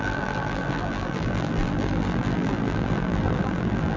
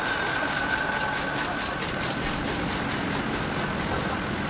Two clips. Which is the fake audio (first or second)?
first